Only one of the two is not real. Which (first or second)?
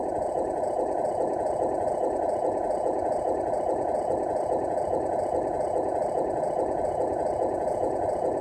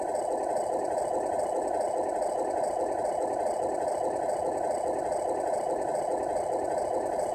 first